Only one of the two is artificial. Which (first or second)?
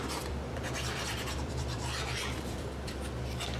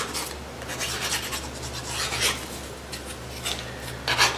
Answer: first